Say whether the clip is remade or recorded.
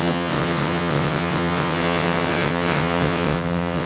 remade